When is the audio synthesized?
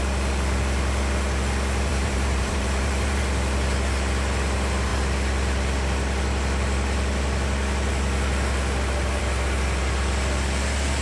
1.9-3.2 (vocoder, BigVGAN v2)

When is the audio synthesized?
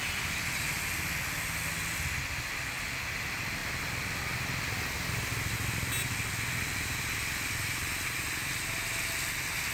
none